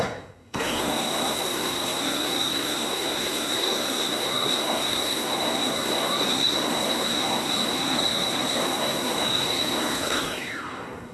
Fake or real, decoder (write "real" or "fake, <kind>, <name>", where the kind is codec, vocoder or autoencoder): fake, codec, SNAC